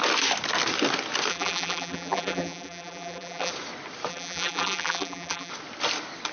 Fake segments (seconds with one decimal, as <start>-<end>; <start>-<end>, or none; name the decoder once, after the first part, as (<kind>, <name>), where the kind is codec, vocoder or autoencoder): 1.3-3.5 (vocoder, BigVGAN v2); 4.1-5.5